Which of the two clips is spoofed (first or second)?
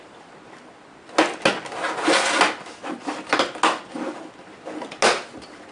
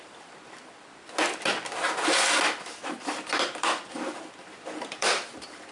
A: second